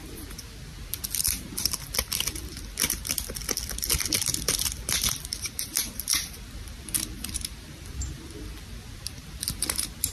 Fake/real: fake